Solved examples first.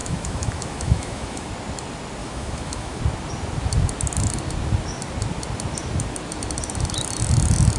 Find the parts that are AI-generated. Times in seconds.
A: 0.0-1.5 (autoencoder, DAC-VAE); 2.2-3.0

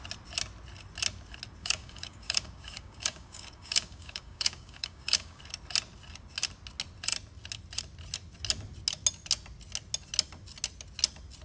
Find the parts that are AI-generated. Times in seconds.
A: 1.6-5.4 (codec, DAC)

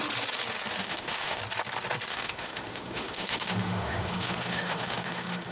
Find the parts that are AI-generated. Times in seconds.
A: 0.8-1.4 (autoencoder, DAC-VAE); 2.1-5.5

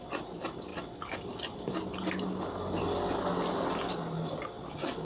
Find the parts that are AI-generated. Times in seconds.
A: none

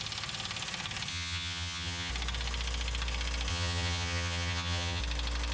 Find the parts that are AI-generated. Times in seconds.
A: 1.1-2.1 (vocoder, HiFi-GAN); 3.5-5.0

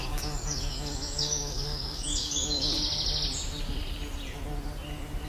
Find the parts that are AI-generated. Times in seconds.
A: 0.0-2.8 (codec, DAC)